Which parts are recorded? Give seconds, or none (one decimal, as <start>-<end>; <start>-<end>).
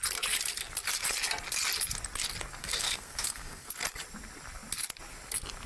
0.0-2.6; 3.7-5.7